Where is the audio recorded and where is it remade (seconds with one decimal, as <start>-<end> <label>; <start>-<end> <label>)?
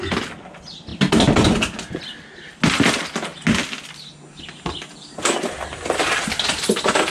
0.0-7.1 recorded